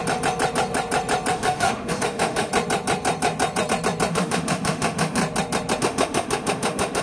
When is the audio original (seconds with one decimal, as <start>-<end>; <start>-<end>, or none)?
0.0-1.3; 2.5-4.1; 5.2-5.8